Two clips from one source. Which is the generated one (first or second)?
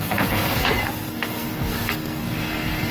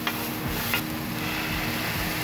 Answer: first